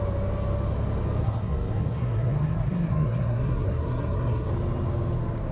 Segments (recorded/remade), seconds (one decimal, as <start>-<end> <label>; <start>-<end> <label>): 0.0-1.2 recorded; 1.2-4.5 remade; 4.5-5.5 recorded